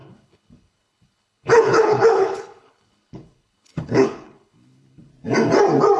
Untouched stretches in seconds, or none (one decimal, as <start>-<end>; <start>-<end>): 5.1-6.0